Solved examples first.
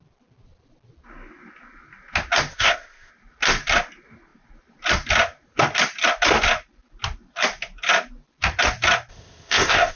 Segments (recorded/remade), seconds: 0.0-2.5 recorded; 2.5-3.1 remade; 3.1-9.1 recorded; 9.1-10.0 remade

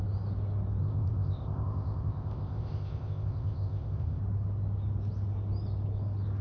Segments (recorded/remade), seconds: 0.0-0.8 recorded; 0.8-4.2 remade; 4.2-6.4 recorded

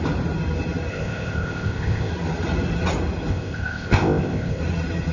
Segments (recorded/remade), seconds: 0.0-0.9 recorded; 0.9-2.1 remade; 2.1-3.3 recorded; 3.3-4.6 remade; 4.6-5.1 recorded